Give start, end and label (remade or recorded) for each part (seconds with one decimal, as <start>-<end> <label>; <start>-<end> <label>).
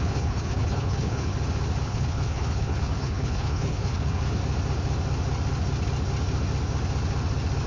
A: 0.0-1.3 remade; 1.3-1.9 recorded; 1.9-4.4 remade; 4.4-7.7 recorded